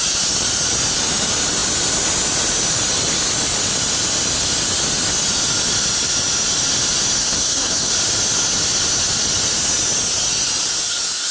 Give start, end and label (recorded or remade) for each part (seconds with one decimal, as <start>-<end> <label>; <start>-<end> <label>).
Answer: 0.0-7.2 recorded; 7.2-7.9 remade; 7.9-11.3 recorded